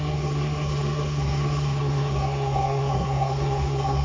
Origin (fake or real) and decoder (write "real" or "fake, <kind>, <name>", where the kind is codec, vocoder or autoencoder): fake, codec, SNAC